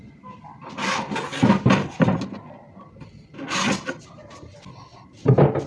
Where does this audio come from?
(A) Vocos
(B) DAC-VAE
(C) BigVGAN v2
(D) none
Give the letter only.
D